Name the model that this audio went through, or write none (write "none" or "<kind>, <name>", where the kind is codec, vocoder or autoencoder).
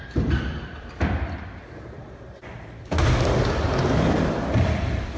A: none